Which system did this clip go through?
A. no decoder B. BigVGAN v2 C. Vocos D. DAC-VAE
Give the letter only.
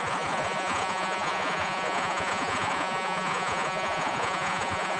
C